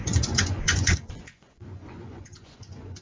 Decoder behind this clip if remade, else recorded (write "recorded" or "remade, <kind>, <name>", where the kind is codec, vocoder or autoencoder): remade, vocoder, Vocos